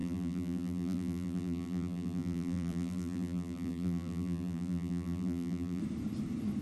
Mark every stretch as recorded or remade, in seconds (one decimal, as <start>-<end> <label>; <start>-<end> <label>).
0.0-5.8 remade; 5.8-6.6 recorded